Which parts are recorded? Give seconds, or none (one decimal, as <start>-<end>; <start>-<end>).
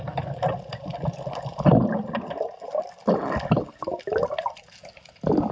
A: 0.0-5.5